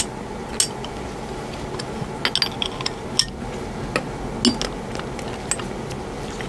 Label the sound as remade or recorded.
recorded